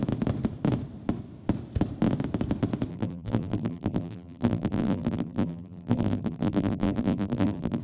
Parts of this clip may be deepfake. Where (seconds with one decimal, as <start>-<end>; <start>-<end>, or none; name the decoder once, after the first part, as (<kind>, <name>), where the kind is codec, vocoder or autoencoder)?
2.9-7.8 (vocoder, BigVGAN v2)